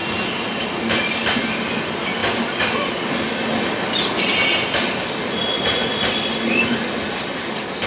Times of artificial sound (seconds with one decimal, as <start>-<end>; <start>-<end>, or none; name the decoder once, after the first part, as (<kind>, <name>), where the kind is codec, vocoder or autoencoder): none